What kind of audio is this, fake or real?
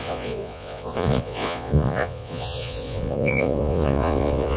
fake